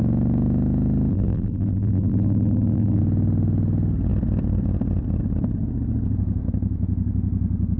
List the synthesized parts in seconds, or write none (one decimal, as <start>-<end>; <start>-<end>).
1.1-3.0